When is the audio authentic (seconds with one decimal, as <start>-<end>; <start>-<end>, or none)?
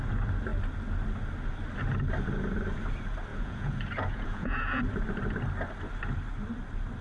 0.0-3.3; 4.8-7.0